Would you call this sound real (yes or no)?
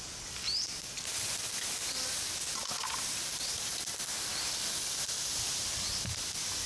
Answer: yes